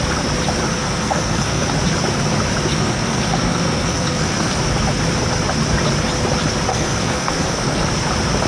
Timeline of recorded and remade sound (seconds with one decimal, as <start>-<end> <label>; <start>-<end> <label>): 0.0-0.7 recorded; 0.7-1.7 remade; 1.7-2.7 recorded; 2.7-4.6 remade; 4.6-6.7 recorded; 6.7-7.9 remade; 7.9-8.5 recorded